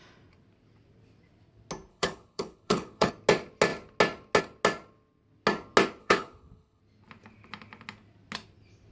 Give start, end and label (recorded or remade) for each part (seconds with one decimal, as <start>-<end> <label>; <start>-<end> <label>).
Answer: 0.0-1.9 recorded; 1.9-3.1 remade; 3.1-6.0 recorded; 6.0-6.8 remade; 6.8-8.9 recorded